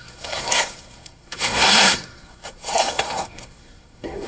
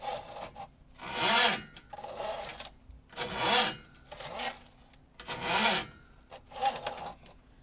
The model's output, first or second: first